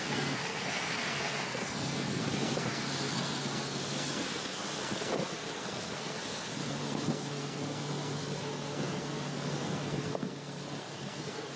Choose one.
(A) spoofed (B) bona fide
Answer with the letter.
A